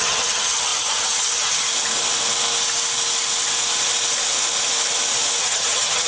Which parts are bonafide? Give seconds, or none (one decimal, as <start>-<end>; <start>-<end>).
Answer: 1.7-5.4